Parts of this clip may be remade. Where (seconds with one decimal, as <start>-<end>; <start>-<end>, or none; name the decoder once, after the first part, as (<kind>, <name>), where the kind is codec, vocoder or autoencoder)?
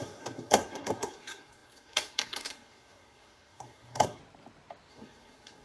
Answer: 0.0-4.2 (codec, SNAC); 4.9-5.6